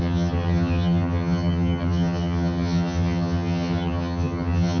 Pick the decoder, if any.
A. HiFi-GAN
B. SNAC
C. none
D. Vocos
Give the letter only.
A